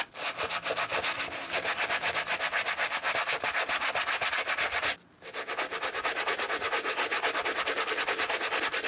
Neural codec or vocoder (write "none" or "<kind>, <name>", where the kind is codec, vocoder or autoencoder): none